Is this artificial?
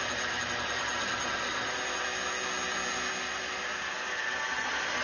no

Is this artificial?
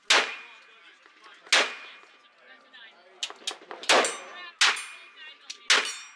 no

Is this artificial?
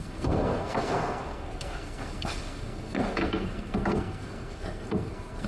yes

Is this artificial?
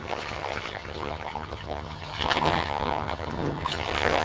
yes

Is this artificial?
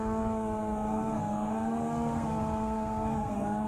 yes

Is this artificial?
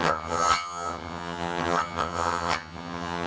yes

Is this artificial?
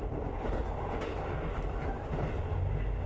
no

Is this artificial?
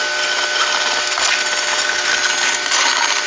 no